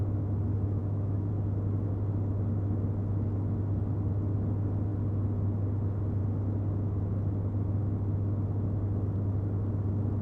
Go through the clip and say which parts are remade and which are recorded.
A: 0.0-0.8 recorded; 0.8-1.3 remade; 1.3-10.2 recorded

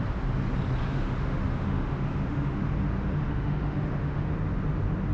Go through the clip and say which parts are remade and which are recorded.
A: 0.0-0.8 recorded; 0.8-2.6 remade; 2.6-3.3 recorded; 3.3-4.3 remade; 4.3-5.1 recorded